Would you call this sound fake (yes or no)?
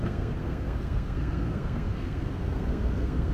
yes